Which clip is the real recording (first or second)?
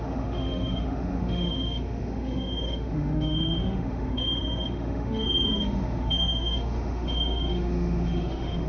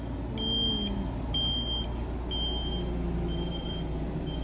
second